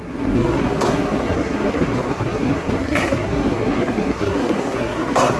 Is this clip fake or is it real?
fake